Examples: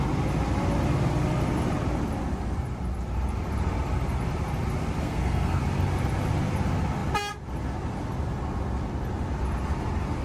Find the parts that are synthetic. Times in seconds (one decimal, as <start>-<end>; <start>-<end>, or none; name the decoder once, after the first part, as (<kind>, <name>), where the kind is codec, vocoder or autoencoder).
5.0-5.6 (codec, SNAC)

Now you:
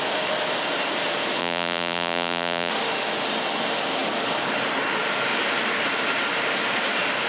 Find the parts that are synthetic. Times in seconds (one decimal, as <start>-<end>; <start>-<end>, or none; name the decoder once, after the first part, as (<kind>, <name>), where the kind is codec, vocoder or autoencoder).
1.4-2.7 (vocoder, BigVGAN v2)

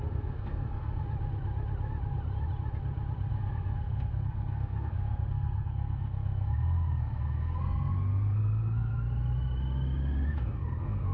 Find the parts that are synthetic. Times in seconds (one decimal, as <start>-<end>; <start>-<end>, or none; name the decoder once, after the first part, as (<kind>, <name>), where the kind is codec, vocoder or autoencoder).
0.0-1.0 (codec, SNAC); 3.3-8.9; 10.3-11.1